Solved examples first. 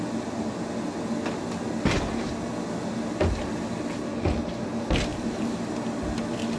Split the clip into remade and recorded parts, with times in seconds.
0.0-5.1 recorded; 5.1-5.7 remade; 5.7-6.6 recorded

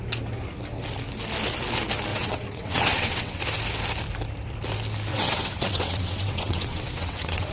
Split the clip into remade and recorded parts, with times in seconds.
0.0-2.1 recorded; 2.1-3.4 remade; 3.4-5.1 recorded; 5.1-7.5 remade